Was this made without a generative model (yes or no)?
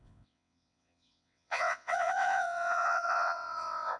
no